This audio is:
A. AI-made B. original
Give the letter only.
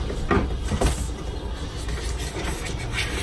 B